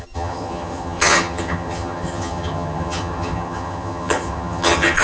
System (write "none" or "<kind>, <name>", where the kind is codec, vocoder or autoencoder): vocoder, HiFi-GAN